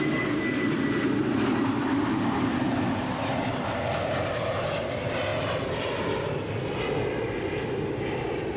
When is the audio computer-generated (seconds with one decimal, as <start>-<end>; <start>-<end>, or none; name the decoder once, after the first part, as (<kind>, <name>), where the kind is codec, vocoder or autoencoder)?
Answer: none